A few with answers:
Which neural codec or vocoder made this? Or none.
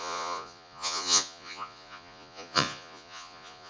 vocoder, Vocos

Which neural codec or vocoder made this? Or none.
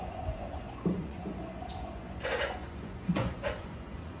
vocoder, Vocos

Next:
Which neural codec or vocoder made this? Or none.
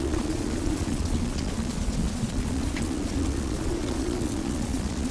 vocoder, Vocos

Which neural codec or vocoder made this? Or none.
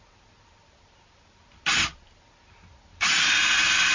none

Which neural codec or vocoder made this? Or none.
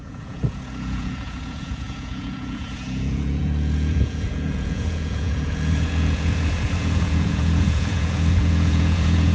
vocoder, Vocos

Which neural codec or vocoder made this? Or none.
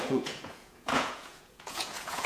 vocoder, Vocos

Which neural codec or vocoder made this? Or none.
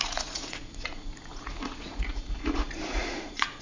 vocoder, Vocos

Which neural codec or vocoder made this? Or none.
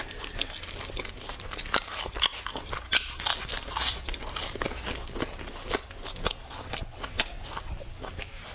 none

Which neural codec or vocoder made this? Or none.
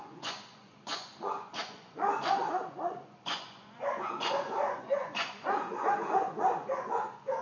vocoder, Vocos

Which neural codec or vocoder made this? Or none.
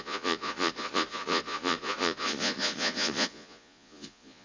vocoder, Vocos